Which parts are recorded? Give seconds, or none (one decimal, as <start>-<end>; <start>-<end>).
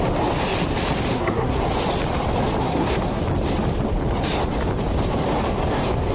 0.0-1.1; 1.6-2.6; 3.2-6.1